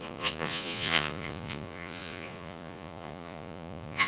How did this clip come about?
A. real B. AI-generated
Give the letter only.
B